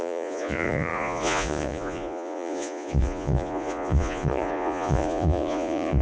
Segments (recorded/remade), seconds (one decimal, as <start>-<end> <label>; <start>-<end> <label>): 0.0-6.0 remade